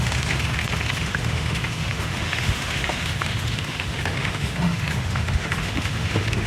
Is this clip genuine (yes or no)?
no